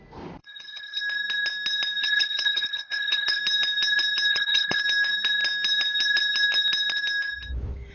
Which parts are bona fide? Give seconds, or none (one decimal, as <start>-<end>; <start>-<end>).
0.0-0.4; 1.0-2.0; 3.4-4.3; 4.8-7.9